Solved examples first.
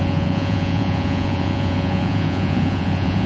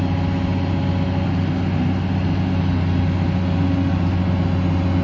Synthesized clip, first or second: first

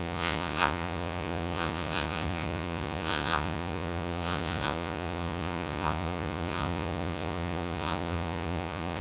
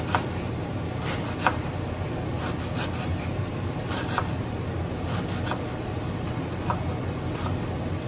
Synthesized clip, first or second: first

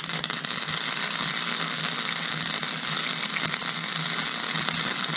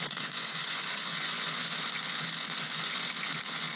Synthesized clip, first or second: second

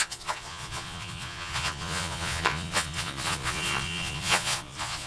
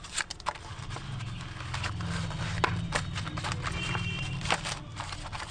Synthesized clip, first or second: first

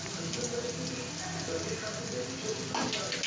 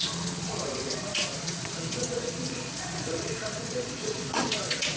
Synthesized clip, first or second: second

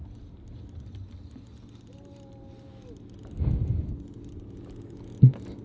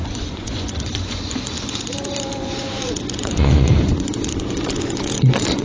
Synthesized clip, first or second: second